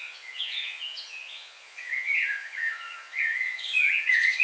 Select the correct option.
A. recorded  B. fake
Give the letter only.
B